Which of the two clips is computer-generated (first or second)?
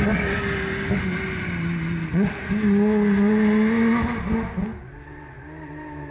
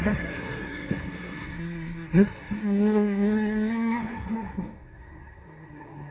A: second